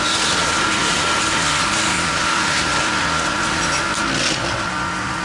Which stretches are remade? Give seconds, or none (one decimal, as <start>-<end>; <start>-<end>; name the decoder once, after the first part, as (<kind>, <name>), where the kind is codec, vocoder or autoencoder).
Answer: 0.8-3.5 (vocoder, BigVGAN v2)